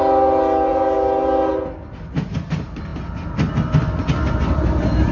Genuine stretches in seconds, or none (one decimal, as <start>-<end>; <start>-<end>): 0.0-5.1